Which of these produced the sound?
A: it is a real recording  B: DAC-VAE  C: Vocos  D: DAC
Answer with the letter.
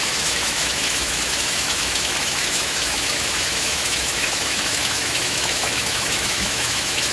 B